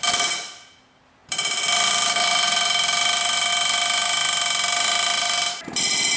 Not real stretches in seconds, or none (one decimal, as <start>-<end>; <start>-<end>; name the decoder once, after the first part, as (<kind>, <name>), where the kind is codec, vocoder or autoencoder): none